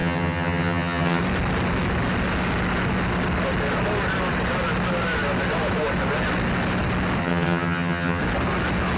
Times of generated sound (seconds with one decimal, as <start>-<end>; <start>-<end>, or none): 0.0-1.2; 7.2-8.2